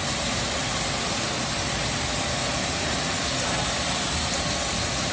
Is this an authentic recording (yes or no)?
yes